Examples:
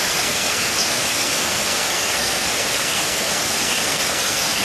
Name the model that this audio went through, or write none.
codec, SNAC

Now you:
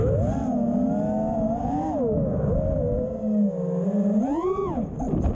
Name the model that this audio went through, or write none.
none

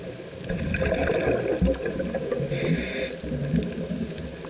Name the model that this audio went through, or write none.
none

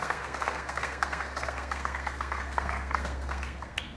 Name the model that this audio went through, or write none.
codec, SNAC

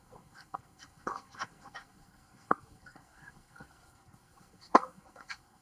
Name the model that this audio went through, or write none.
codec, SNAC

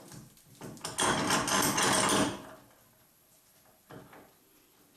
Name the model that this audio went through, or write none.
none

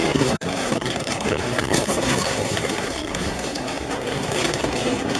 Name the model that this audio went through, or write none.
codec, SNAC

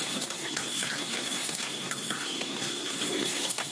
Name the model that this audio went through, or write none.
codec, SNAC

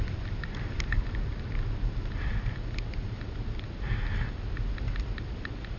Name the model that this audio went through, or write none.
none